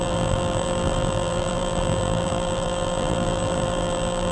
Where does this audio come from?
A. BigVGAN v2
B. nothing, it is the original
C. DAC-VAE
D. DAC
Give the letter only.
A